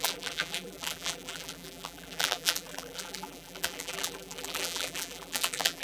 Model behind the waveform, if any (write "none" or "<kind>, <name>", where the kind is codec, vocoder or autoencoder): vocoder, BigVGAN v2